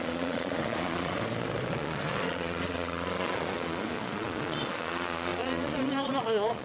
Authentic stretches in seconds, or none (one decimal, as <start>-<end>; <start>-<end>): none